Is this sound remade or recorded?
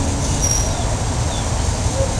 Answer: recorded